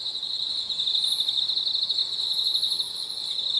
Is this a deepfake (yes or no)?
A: no